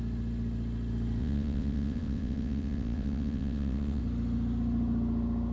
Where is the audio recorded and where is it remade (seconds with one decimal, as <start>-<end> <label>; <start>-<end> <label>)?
0.0-1.2 recorded; 1.2-4.0 remade; 4.0-5.5 recorded